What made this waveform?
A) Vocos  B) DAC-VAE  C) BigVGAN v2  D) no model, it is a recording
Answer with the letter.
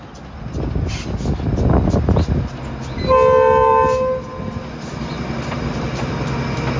D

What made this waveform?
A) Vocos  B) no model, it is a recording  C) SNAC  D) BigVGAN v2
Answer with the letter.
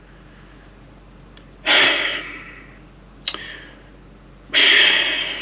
B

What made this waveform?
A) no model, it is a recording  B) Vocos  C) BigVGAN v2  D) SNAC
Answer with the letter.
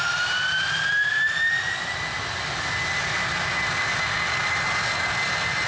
A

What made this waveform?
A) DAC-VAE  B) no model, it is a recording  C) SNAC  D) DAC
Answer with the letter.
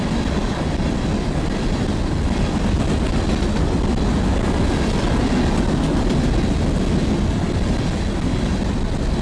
B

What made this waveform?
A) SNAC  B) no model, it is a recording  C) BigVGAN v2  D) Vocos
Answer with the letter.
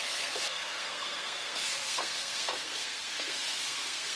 A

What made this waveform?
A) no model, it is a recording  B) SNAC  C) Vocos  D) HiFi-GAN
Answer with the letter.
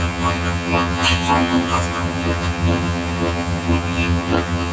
D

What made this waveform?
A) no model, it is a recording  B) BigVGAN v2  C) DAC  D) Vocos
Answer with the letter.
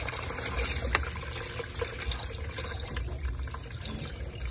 A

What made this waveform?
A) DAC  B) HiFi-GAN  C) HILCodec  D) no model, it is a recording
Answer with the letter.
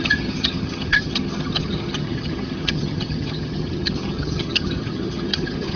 B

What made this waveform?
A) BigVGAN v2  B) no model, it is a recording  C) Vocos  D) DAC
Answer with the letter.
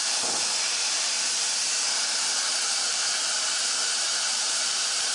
A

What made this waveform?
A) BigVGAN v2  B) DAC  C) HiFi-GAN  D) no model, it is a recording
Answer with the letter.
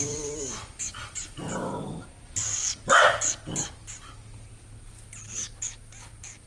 D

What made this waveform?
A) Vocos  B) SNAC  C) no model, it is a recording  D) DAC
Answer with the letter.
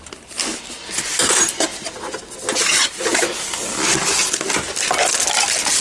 C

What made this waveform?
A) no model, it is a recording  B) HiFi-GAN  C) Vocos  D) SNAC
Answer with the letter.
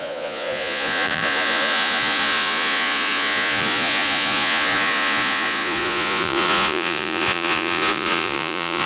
C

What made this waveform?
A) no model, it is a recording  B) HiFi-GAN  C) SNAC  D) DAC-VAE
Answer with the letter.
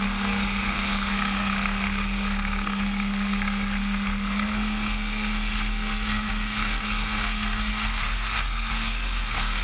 C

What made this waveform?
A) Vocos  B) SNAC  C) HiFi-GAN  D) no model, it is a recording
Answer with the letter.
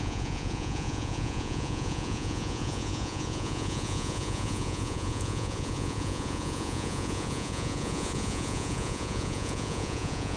A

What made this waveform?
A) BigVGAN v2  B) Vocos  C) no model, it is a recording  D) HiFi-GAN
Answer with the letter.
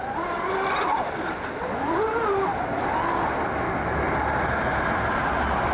C